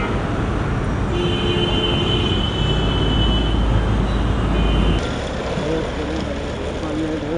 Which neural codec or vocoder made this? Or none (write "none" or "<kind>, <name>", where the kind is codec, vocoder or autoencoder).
none